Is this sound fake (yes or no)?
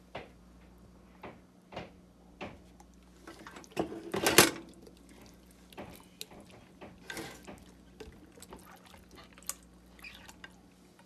no